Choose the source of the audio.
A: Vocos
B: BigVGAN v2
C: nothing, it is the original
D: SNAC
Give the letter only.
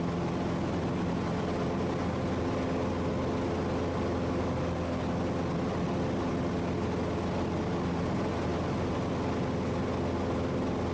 C